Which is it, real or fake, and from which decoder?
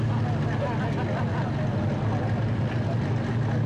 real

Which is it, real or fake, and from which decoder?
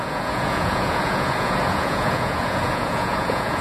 fake, vocoder, Vocos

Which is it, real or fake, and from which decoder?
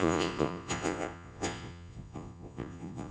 fake, vocoder, Vocos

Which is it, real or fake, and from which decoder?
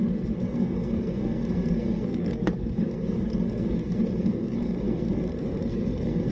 fake, codec, SNAC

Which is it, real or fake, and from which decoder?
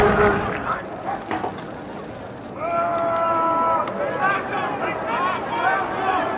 real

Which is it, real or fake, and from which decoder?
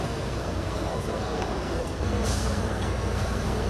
fake, codec, SNAC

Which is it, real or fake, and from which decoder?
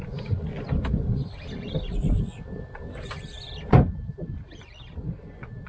real